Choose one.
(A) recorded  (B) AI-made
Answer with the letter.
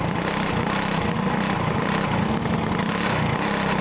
A